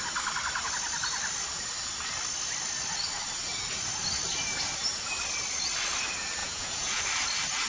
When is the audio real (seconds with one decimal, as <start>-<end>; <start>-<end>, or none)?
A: 0.0-6.4; 7.0-7.7

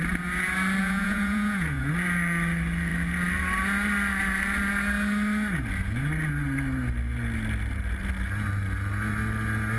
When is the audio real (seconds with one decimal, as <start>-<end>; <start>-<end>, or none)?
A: 0.0-0.8; 1.9-9.8

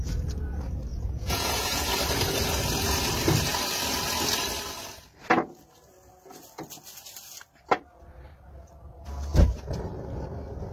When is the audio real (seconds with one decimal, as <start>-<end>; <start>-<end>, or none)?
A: 0.0-0.9; 1.9-10.7

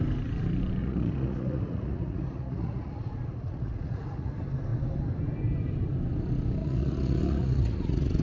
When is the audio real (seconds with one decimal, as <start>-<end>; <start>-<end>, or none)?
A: 0.0-0.8; 4.3-6.6